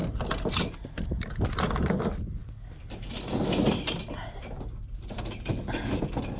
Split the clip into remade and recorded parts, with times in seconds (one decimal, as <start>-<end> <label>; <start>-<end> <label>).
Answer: 0.0-6.4 recorded